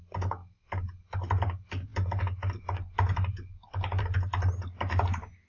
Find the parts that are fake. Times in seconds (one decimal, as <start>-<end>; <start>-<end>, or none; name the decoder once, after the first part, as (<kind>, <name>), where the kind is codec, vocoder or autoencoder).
none